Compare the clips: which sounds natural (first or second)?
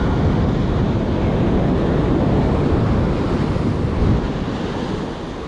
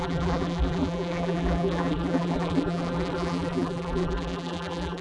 first